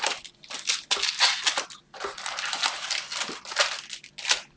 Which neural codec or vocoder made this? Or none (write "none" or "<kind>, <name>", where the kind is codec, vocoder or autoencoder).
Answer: none